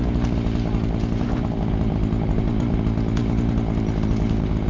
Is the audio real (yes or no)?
yes